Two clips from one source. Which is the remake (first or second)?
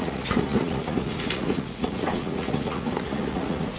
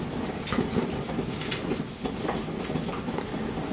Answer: first